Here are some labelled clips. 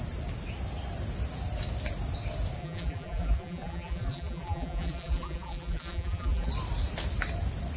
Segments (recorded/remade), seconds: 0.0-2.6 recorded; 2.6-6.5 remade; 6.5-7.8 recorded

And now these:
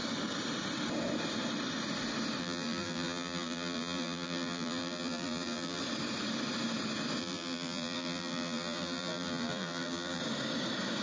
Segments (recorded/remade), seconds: 0.0-2.4 recorded; 2.4-5.8 remade; 5.8-7.2 recorded; 7.2-10.2 remade; 10.2-11.0 recorded